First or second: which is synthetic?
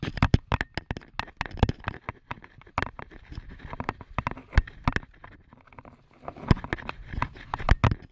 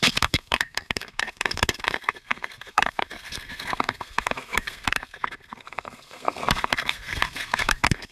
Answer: second